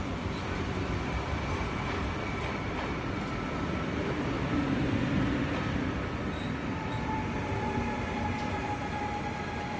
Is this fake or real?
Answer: fake